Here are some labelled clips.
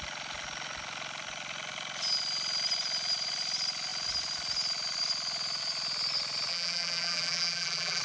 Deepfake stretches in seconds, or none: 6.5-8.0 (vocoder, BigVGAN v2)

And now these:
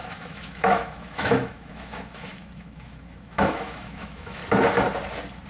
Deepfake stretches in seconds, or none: 0.0-4.4 (autoencoder, DAC-VAE)

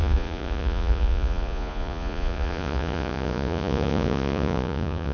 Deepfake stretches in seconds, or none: 0.0-5.1 (vocoder, Vocos)

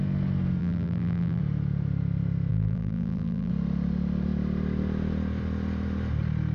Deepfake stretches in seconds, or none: 0.6-1.4 (vocoder, BigVGAN v2); 2.5-3.5

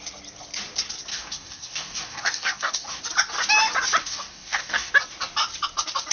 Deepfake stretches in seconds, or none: 1.1-3.0 (codec, DAC); 4.0-4.9

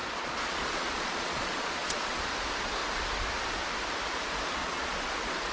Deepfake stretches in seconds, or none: 0.0-2.3 (vocoder, Vocos); 4.6-5.1

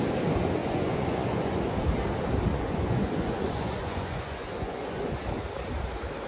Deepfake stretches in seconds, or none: 0.6-1.6 (vocoder, Vocos); 2.5-5.2

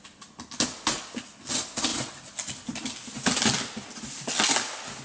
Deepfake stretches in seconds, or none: none